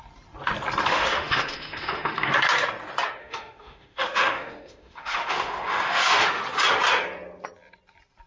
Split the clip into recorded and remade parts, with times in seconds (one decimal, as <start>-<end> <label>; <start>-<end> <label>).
0.0-0.9 recorded; 0.9-2.3 remade; 2.3-3.2 recorded; 3.2-6.4 remade; 6.4-8.3 recorded